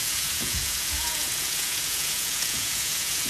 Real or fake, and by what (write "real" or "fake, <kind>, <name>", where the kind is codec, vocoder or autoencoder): fake, vocoder, Vocos